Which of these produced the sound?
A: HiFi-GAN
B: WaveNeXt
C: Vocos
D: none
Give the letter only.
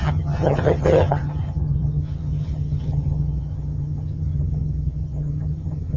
A